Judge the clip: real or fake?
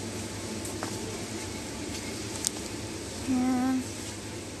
real